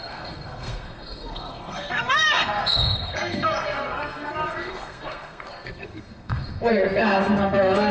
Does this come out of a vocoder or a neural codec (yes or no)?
yes